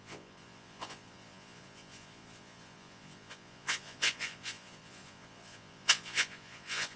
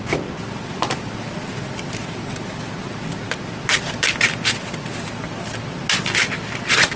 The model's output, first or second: first